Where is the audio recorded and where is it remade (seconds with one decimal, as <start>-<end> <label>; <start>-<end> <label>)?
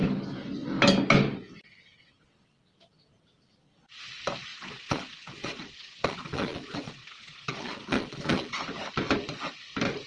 0.0-4.5 recorded; 4.5-8.5 remade; 8.5-10.1 recorded